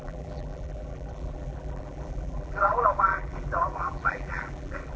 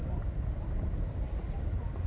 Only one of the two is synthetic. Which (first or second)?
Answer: first